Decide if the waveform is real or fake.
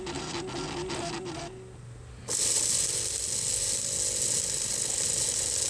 real